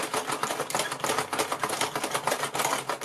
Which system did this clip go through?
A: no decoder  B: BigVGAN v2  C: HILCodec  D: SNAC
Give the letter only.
A